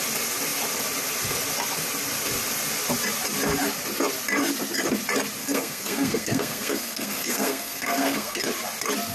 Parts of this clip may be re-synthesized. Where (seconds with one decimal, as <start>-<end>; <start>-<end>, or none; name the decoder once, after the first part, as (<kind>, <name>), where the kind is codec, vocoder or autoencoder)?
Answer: 5.4-8.4 (codec, SNAC)